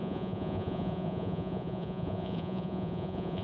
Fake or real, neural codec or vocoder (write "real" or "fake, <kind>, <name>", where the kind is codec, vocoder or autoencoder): fake, vocoder, Vocos